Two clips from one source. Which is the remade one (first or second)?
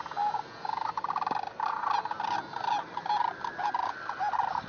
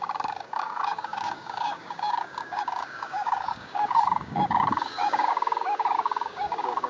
second